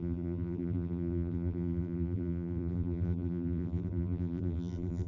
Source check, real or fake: fake